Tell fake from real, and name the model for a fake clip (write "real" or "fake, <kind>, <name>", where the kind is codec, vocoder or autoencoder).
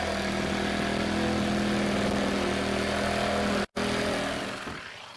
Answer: real